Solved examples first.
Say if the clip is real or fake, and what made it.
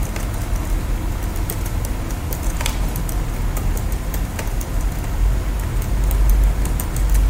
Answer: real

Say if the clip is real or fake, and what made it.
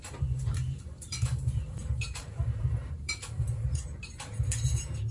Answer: fake, vocoder, BigVGAN v2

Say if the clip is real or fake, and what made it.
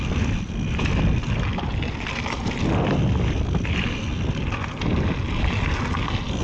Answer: real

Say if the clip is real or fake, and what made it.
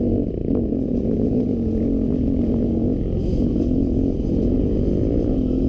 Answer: real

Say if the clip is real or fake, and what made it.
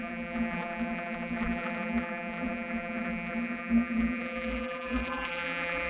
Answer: fake, vocoder, BigVGAN v2